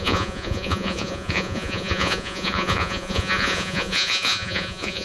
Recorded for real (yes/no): no